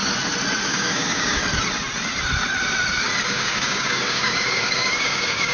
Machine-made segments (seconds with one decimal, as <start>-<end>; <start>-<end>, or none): 0.7-1.4; 3.3-5.5